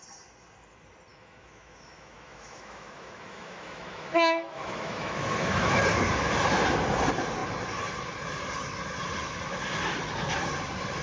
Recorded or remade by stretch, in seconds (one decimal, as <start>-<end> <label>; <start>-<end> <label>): 0.0-1.1 recorded; 1.1-5.7 remade; 5.7-11.0 recorded